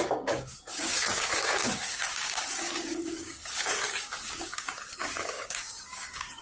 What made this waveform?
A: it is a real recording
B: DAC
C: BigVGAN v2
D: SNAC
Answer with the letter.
B